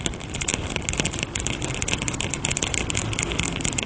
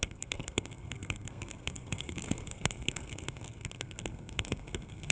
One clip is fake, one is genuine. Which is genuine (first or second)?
first